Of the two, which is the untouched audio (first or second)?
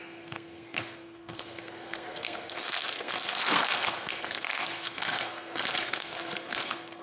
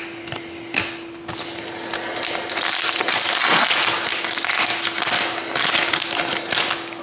second